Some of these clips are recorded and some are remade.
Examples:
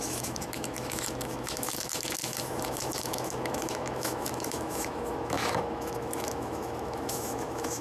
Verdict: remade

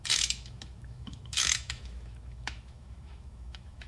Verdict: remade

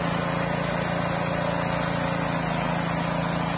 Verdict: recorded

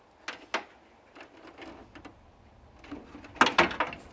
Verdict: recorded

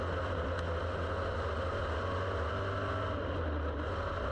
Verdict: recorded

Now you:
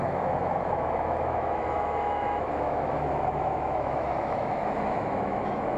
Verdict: remade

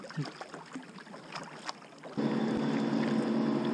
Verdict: recorded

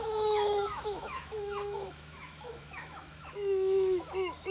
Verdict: remade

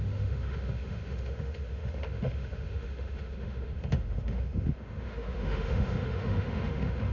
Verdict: remade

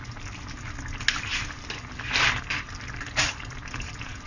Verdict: recorded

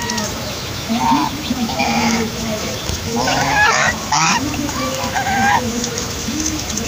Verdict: remade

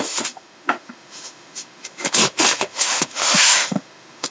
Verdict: remade